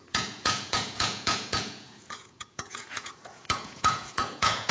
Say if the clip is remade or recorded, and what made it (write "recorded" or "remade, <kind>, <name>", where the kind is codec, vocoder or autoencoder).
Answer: remade, vocoder, Vocos